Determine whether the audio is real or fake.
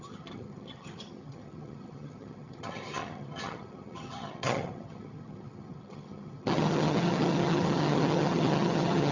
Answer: fake